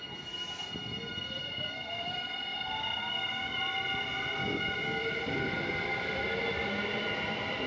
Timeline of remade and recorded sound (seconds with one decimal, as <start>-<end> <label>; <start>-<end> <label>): 0.0-1.4 recorded; 1.4-2.1 remade; 2.1-2.5 recorded; 2.5-3.6 remade; 3.6-4.4 recorded; 4.4-5.0 remade; 5.0-7.7 recorded